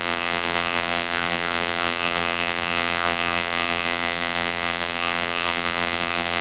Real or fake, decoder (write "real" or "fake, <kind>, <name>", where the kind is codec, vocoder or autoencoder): fake, vocoder, BigVGAN v2